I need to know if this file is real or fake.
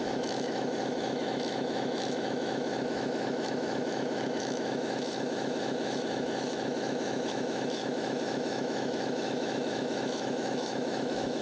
fake